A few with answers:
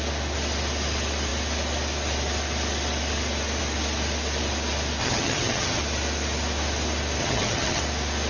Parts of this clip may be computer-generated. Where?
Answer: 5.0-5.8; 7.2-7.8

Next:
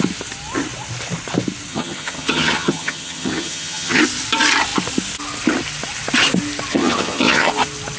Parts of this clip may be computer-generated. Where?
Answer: 1.7-4.0; 6.7-7.5

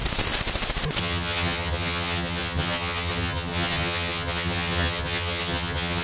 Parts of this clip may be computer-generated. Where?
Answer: 1.0-6.0

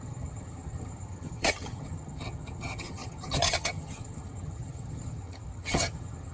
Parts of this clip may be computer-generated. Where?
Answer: 0.0-6.3

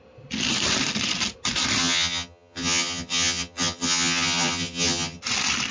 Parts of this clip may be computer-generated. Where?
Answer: 1.8-5.2

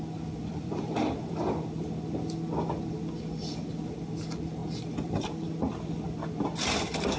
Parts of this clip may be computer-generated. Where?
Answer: none